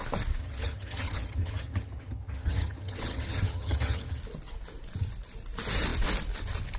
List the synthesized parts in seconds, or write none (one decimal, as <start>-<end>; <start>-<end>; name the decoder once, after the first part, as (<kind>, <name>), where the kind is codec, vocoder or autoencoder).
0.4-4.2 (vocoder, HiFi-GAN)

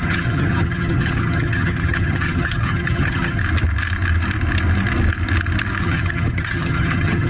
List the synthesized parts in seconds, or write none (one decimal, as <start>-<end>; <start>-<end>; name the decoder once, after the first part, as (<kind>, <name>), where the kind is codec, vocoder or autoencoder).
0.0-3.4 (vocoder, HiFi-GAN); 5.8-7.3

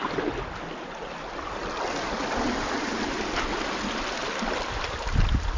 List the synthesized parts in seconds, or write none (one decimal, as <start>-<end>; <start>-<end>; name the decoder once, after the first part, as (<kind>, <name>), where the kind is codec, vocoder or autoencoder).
none

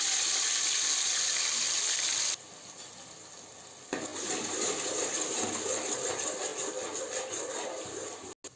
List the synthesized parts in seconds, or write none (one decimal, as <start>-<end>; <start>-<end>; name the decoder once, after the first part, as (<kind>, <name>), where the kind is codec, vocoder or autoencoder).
none